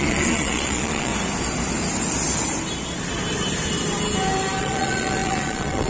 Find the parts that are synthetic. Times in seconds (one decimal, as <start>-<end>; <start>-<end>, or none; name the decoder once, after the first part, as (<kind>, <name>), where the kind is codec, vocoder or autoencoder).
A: 0.0-1.1 (vocoder, Vocos); 4.6-5.9